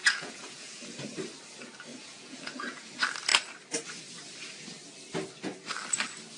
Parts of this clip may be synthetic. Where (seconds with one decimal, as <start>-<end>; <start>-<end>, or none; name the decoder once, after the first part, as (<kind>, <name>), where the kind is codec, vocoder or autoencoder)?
0.0-0.9 (vocoder, Vocos); 1.9-2.9